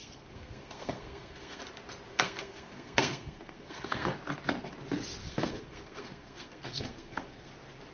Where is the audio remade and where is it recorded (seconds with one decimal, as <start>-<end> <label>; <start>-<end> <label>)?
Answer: 0.0-1.6 remade; 1.6-2.1 recorded; 2.1-4.1 remade; 4.1-5.2 recorded; 5.2-7.5 remade; 7.5-7.9 recorded